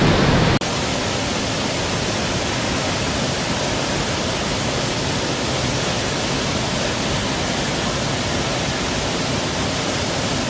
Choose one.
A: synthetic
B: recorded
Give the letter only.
B